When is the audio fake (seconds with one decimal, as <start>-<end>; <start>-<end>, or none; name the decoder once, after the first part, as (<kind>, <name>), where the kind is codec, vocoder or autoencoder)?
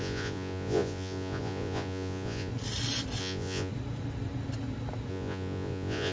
0.0-2.5 (vocoder, Vocos); 3.2-3.7; 5.1-6.1